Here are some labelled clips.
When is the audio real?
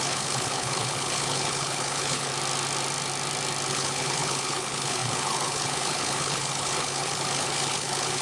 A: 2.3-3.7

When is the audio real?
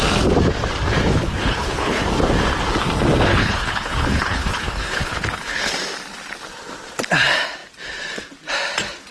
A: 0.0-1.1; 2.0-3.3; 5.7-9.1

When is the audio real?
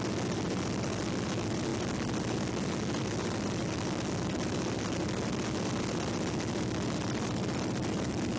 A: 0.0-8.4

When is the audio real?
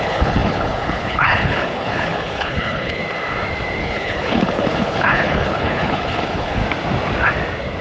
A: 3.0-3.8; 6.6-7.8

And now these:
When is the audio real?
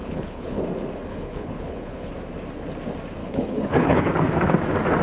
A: 0.6-1.1; 2.1-3.2; 4.1-5.0